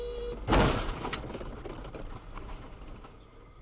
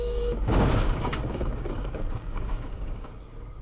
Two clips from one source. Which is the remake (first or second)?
second